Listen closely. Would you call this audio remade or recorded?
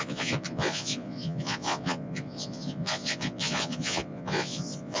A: remade